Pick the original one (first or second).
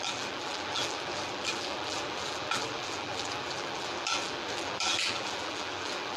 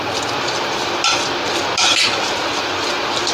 second